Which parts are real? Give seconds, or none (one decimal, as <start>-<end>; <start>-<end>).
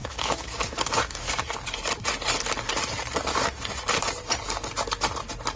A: 1.3-5.6